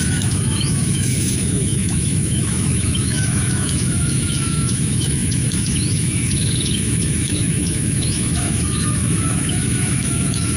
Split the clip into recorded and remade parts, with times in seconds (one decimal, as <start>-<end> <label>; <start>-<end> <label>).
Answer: 0.0-10.6 remade